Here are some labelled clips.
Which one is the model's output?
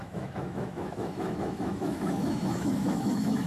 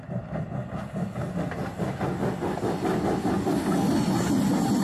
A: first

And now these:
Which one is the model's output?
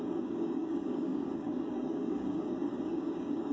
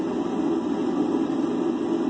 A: first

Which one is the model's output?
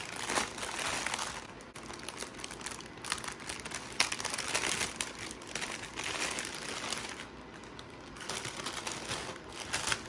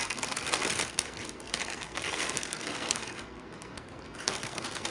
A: second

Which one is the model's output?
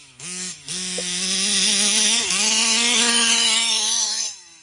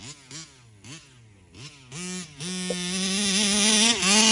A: first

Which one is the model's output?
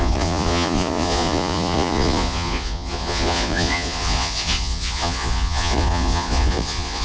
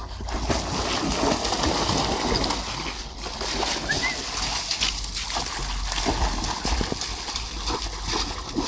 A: first